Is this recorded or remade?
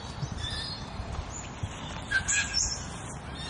recorded